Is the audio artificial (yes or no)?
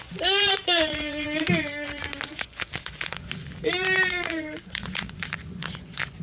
yes